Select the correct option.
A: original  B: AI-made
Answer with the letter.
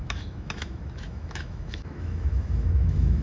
B